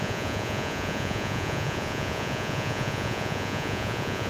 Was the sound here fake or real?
fake